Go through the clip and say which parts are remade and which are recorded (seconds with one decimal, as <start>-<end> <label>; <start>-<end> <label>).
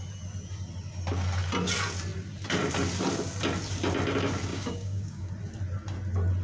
0.0-4.5 recorded; 4.5-5.3 remade; 5.3-6.4 recorded